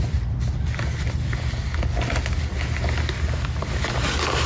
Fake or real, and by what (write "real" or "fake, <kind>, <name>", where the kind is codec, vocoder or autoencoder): real